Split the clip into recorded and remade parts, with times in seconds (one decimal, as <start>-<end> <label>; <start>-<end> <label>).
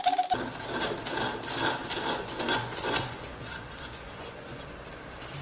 0.0-1.8 recorded; 1.8-4.8 remade; 4.8-5.4 recorded